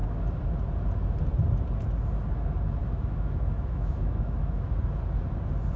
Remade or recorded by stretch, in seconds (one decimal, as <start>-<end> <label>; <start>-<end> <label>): 0.0-2.8 recorded; 2.8-4.7 remade; 4.7-5.8 recorded